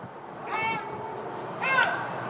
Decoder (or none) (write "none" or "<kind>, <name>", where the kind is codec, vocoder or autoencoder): none